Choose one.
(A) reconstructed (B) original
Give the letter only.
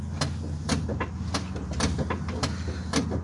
B